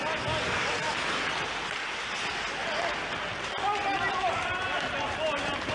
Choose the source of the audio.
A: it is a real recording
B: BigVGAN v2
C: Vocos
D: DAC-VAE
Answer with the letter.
A